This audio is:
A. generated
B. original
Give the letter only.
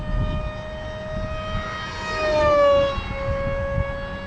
B